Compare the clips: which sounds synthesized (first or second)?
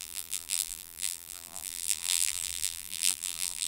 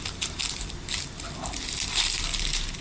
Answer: first